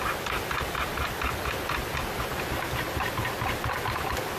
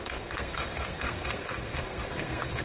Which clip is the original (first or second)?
first